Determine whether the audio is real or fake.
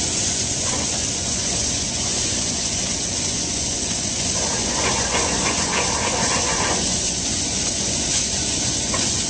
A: fake